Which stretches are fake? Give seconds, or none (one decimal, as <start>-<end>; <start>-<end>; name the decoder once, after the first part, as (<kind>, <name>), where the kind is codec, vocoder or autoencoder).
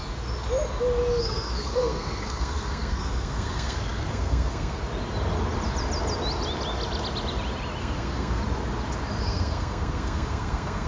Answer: 1.2-4.8 (codec, SNAC); 7.8-8.4; 9.2-10.9